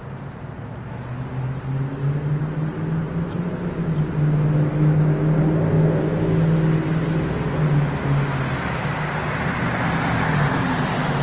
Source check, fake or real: real